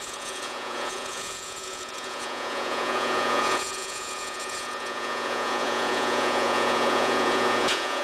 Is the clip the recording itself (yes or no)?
no